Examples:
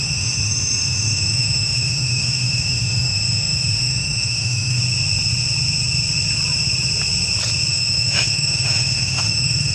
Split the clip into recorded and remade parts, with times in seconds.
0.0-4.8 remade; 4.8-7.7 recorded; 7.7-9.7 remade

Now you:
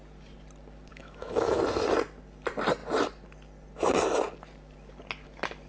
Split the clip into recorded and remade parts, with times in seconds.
0.0-0.9 recorded; 0.9-1.6 remade; 1.6-5.7 recorded

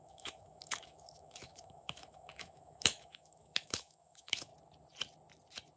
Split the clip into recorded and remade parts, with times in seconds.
0.0-4.5 remade; 4.5-5.8 recorded

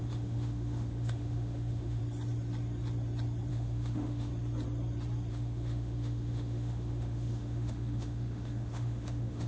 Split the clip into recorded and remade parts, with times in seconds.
0.0-2.0 remade; 2.0-3.5 recorded; 3.5-4.3 remade; 4.3-5.3 recorded; 5.3-9.5 remade

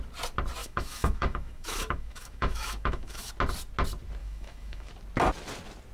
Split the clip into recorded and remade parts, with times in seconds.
0.0-0.6 recorded; 0.6-3.3 remade; 3.3-4.2 recorded; 4.2-4.9 remade; 4.9-5.9 recorded

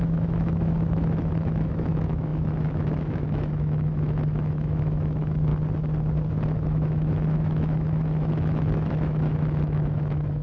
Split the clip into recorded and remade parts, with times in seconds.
0.0-5.5 remade; 5.5-6.3 recorded; 6.3-10.4 remade

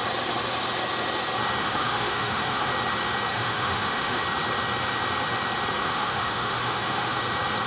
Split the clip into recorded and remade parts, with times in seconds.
0.0-1.6 recorded; 1.6-2.7 remade; 2.7-3.3 recorded; 3.3-4.2 remade; 4.2-5.8 recorded; 5.8-7.2 remade; 7.2-7.7 recorded